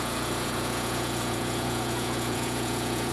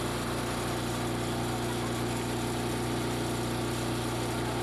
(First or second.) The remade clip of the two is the first